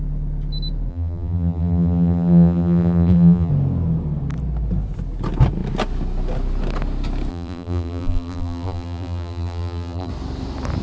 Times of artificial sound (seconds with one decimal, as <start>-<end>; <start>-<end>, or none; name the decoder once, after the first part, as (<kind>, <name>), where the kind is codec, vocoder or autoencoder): 0.9-3.5 (vocoder, BigVGAN v2); 7.3-10.1